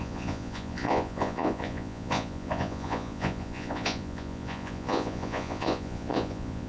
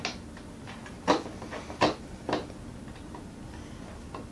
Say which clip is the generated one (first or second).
first